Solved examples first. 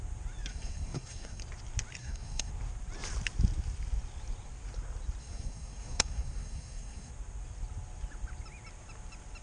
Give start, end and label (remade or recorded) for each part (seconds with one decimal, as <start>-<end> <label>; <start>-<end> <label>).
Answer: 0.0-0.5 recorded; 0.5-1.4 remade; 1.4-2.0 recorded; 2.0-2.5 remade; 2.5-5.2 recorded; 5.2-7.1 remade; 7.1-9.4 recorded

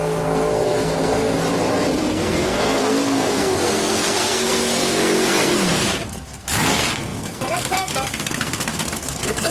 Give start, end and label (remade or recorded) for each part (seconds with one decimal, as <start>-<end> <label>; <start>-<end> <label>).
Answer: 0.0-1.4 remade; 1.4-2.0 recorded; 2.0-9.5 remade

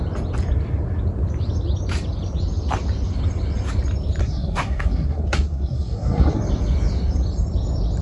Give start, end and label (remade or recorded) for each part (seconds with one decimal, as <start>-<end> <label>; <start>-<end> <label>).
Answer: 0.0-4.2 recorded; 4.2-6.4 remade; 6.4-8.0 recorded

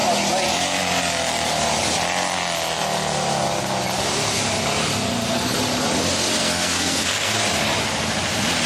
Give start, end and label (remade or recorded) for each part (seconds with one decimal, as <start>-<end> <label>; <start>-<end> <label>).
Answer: 0.0-6.4 recorded; 6.4-7.3 remade; 7.3-8.7 recorded